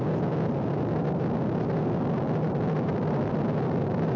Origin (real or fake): fake